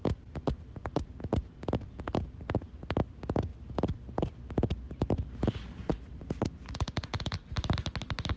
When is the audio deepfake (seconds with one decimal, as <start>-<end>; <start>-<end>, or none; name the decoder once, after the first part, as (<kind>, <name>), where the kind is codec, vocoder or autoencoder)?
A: none